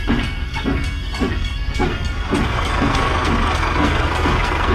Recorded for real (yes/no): no